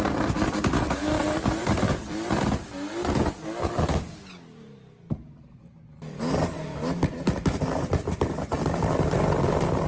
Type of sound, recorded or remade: recorded